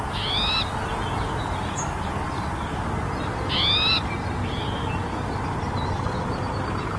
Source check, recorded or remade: recorded